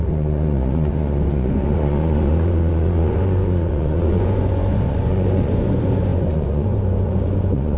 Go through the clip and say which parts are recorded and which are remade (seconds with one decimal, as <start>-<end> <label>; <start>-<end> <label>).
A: 0.0-7.8 remade